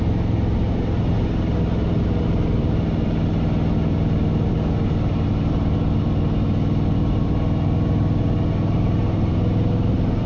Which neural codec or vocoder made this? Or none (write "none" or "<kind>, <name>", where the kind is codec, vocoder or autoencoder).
none